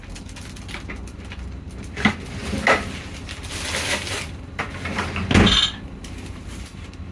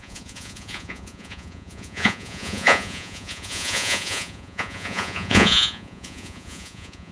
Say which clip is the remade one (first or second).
second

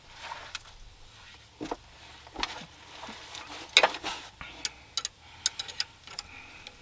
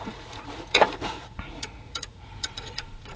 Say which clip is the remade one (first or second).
second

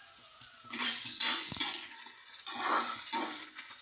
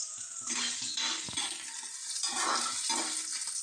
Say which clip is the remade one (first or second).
first